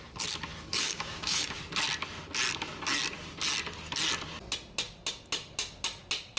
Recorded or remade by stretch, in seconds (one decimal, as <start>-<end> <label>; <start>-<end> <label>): 0.0-0.7 recorded; 0.7-1.6 remade; 1.6-6.4 recorded